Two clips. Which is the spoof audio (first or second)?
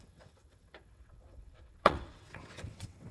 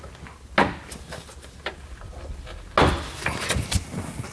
first